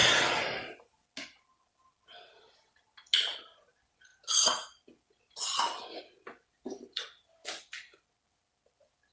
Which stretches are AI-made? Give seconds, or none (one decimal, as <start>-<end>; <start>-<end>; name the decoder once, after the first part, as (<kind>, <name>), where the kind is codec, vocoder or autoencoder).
none